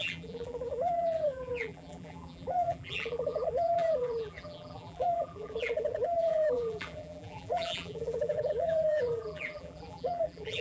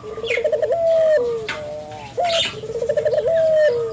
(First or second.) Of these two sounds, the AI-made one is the first